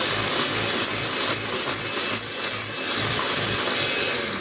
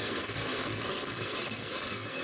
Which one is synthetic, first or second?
second